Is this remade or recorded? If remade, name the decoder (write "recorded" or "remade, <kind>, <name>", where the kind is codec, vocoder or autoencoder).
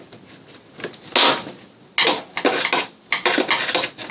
recorded